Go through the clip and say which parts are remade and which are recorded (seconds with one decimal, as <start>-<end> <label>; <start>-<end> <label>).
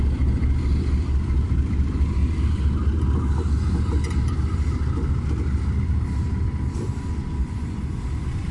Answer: 0.0-7.4 recorded; 7.4-8.0 remade; 8.0-8.5 recorded